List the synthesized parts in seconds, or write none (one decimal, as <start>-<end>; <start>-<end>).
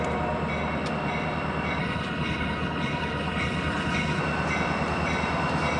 1.8-4.2